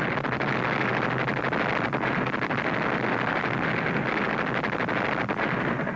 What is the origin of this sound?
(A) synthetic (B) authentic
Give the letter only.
B